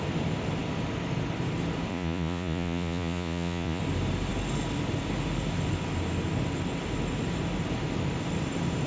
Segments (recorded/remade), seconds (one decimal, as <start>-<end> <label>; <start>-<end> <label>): 0.0-1.9 recorded; 1.9-3.8 remade; 3.8-8.9 recorded